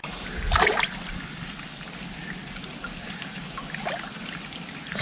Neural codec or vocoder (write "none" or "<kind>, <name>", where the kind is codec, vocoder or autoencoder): none